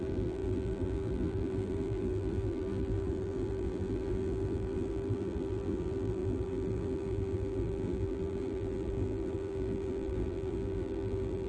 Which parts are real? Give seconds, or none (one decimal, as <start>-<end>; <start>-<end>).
none

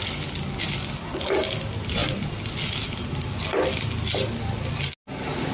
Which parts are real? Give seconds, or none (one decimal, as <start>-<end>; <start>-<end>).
0.0-5.5

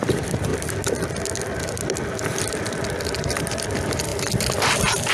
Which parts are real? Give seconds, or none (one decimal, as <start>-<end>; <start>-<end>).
0.5-2.9

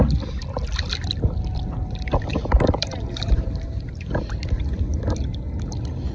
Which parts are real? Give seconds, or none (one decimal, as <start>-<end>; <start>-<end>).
0.0-2.3; 4.1-6.1

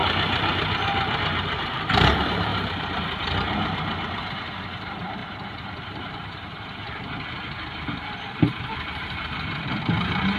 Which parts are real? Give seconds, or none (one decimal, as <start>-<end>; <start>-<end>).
2.5-4.2